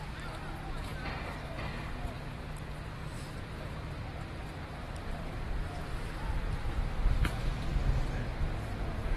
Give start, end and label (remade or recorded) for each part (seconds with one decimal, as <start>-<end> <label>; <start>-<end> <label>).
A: 0.0-0.9 recorded; 0.9-1.6 remade; 1.6-3.0 recorded; 3.0-7.7 remade; 7.7-9.2 recorded